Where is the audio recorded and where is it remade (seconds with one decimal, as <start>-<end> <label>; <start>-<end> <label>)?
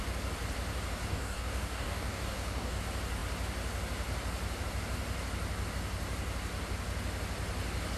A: 0.0-1.1 recorded; 1.1-2.8 remade; 2.8-8.0 recorded